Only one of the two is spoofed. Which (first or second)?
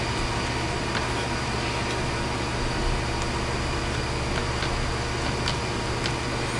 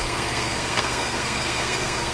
second